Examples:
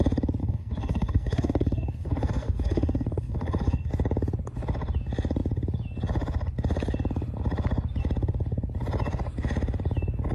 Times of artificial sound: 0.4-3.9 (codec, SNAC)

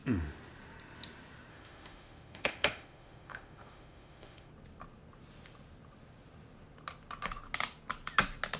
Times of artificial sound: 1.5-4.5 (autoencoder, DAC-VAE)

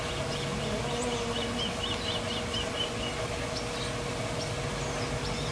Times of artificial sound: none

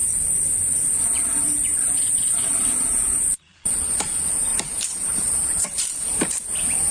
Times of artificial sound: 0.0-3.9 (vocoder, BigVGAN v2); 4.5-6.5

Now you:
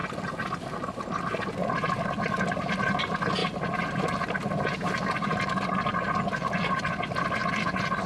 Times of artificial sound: none

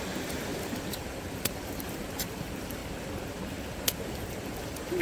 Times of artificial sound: 0.0-2.8 (vocoder, BigVGAN v2); 4.0-5.0